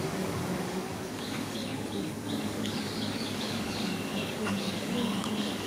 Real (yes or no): no